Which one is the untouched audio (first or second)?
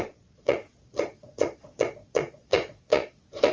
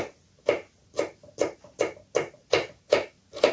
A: second